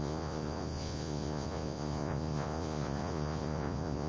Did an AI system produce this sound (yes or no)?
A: yes